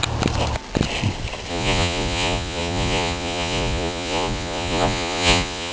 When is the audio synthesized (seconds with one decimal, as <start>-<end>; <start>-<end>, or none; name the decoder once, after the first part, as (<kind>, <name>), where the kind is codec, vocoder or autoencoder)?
1.5-5.7 (vocoder, Vocos)